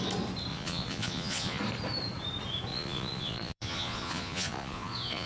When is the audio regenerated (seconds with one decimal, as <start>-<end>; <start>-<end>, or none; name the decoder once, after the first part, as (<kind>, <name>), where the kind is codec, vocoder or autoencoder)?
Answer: 0.5-1.6 (vocoder, Vocos); 2.7-5.3